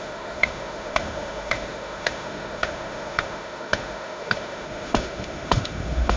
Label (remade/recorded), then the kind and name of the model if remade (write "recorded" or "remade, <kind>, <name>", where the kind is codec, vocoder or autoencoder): remade, autoencoder, DAC-VAE